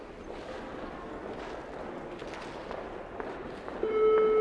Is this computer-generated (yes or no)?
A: no